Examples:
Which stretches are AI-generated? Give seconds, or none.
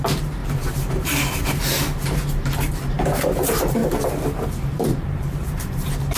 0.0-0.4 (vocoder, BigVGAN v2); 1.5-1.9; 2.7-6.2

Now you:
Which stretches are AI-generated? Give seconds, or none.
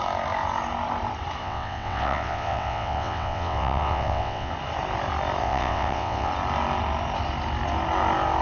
1.4-4.5 (vocoder, WaveNeXt); 5.4-6.3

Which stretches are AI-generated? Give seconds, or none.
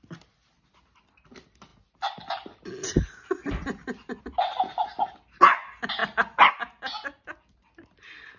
none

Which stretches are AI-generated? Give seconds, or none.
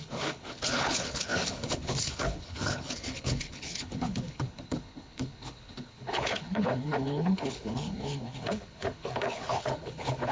0.0-10.3 (codec, HILCodec)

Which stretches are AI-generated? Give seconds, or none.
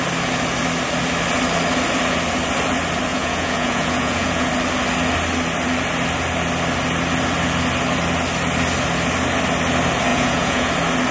3.1-4.5 (vocoder, Vocos); 10.1-10.7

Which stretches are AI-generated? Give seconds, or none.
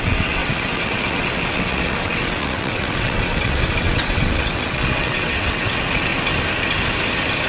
0.0-6.1 (vocoder, WaveNeXt)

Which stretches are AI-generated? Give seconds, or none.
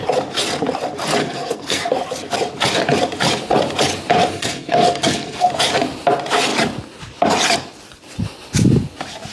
1.2-1.9 (codec, SNAC); 4.3-5.5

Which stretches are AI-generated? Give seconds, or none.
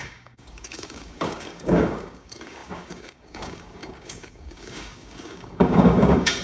0.0-6.4 (codec, DAC)